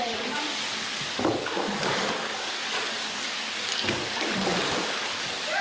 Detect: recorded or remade remade